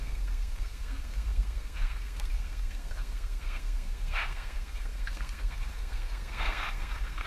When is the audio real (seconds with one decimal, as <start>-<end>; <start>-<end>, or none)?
none